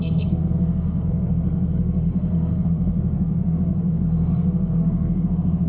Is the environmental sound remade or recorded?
remade